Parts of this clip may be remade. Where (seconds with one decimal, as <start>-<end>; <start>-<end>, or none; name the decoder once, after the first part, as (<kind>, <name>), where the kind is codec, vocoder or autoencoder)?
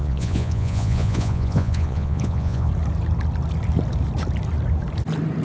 0.0-2.7 (vocoder, Vocos)